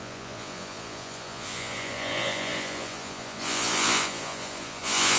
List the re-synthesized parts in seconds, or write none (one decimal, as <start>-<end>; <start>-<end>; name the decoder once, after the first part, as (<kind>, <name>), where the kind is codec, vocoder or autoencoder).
0.0-5.2 (vocoder, Vocos)